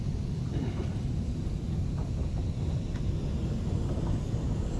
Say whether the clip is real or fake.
real